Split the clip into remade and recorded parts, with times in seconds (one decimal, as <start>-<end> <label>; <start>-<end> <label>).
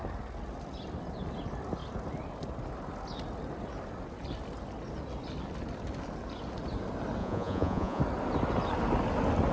0.0-7.2 recorded; 7.2-8.0 remade; 8.0-9.5 recorded